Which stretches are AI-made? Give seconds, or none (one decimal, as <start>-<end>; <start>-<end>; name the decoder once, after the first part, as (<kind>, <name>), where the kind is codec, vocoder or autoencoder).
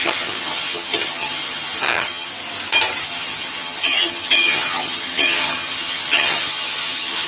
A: 0.0-2.3 (vocoder, HiFi-GAN); 3.0-7.3